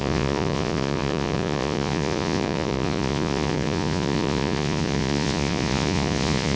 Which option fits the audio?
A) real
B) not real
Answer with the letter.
B